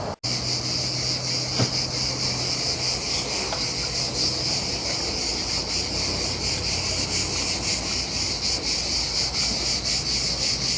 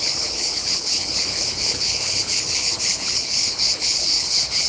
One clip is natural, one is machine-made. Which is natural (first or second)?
first